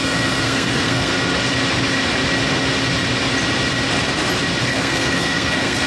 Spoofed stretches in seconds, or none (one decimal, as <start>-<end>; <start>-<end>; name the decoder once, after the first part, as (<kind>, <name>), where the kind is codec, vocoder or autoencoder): 0.0-1.1 (codec, SNAC); 4.6-5.9